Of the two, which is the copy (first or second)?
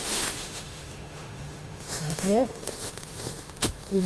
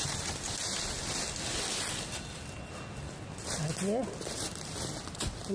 first